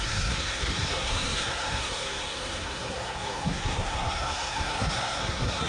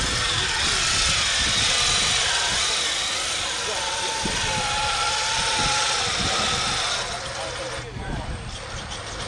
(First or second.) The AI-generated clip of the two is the first